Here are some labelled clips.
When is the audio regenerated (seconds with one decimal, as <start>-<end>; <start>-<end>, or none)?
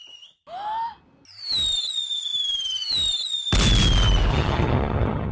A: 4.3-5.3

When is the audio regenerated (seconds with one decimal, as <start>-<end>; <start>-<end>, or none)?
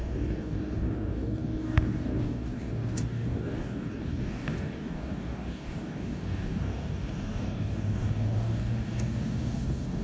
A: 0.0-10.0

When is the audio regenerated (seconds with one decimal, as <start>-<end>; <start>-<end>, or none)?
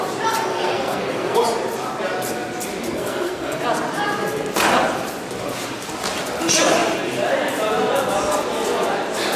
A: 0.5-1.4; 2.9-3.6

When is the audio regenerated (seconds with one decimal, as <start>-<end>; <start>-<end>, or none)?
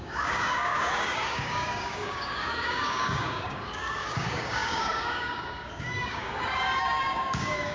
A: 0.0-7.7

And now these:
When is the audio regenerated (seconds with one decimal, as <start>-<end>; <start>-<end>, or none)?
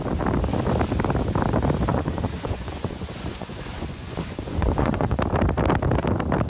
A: 1.9-5.2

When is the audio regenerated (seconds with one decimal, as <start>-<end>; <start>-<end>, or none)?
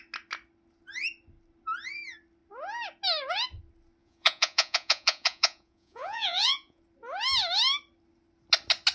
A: 4.0-6.8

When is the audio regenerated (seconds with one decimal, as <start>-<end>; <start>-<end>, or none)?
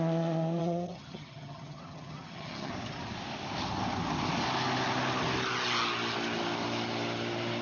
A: 0.6-2.7